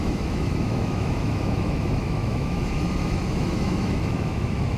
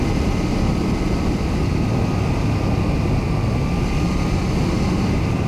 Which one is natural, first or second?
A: second